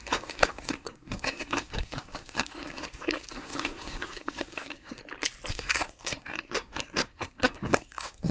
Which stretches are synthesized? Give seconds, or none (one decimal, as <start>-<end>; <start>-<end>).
0.0-5.0; 5.5-8.3